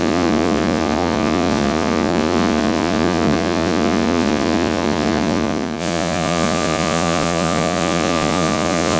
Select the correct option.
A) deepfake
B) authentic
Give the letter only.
A